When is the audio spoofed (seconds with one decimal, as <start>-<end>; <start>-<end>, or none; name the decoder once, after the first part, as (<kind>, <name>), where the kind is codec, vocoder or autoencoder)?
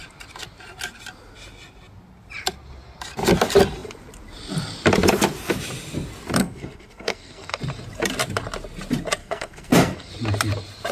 6.4-7.6 (codec, SNAC); 9.2-10.1